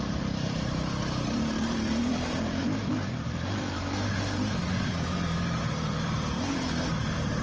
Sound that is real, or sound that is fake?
fake